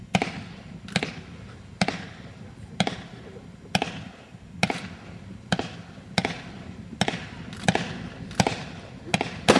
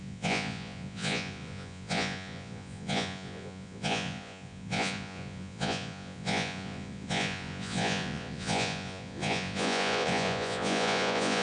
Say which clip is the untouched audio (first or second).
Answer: first